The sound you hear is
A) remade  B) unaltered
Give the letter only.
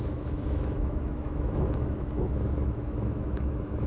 A